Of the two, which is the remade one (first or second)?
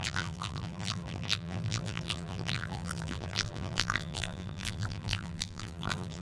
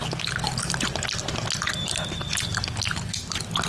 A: first